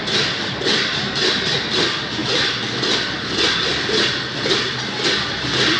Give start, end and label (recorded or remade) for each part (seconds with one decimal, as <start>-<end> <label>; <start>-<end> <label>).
0.0-5.8 recorded